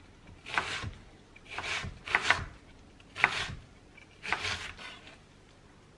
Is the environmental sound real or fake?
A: fake